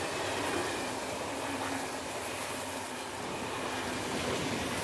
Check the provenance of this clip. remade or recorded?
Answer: recorded